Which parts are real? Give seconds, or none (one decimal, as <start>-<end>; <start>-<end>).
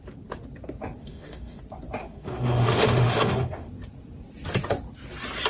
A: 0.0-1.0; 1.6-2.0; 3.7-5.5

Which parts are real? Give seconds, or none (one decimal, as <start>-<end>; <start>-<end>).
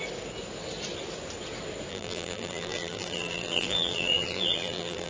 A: 0.0-1.9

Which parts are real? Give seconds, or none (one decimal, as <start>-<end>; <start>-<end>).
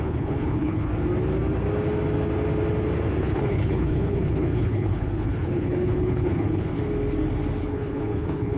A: 0.9-3.2; 6.7-7.6